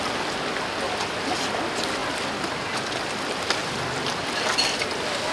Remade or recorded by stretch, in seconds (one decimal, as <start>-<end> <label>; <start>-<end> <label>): 0.0-3.6 recorded; 3.6-4.5 remade; 4.5-5.3 recorded